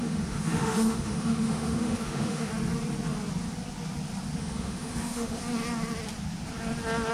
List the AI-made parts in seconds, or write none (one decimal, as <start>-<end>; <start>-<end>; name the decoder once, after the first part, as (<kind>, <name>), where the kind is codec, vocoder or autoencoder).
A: 0.0-2.5 (autoencoder, DAC-VAE); 4.4-5.4